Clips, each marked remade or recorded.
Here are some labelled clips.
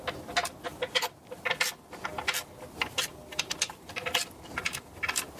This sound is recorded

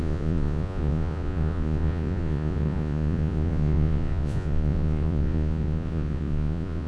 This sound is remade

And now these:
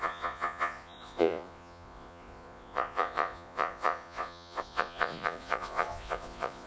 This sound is remade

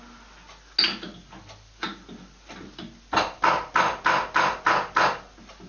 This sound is recorded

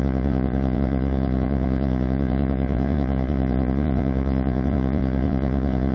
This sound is remade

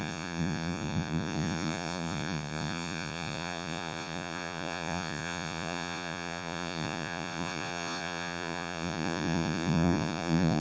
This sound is remade